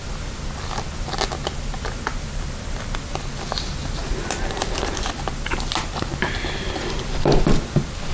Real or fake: real